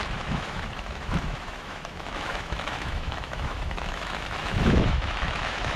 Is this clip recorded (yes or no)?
no